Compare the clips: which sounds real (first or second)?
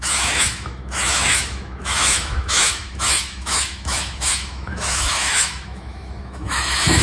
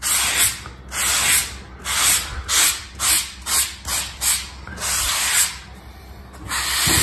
second